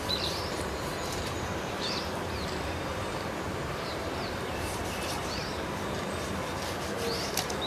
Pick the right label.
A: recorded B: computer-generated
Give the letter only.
B